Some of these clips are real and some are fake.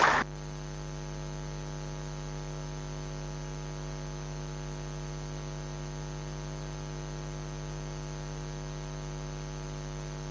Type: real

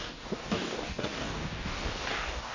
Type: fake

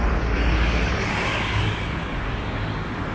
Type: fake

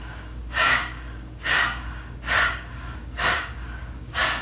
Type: fake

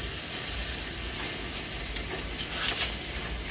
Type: real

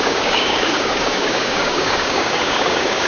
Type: fake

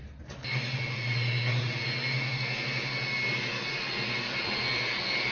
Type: real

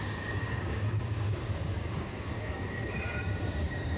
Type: fake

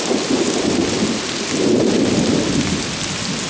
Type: real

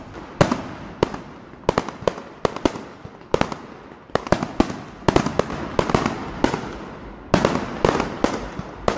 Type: real